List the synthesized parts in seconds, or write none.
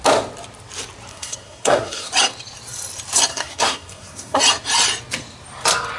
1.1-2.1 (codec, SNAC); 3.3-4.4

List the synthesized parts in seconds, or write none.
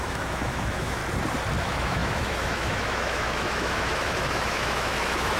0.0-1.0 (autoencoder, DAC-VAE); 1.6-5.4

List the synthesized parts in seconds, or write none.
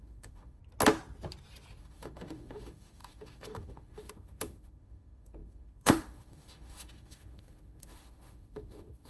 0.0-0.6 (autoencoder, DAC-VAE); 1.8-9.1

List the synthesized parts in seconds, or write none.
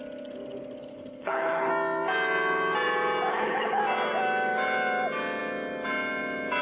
0.9-1.7 (codec, HILCodec); 3.3-3.8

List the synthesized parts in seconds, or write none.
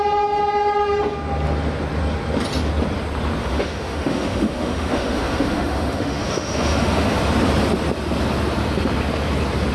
3.4-7.2 (autoencoder, DAC-VAE)